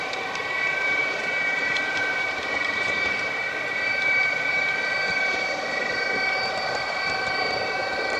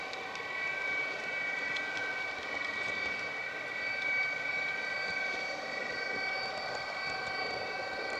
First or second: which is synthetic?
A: first